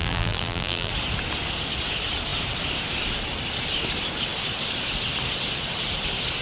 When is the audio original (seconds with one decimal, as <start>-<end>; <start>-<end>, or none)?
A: 0.9-6.4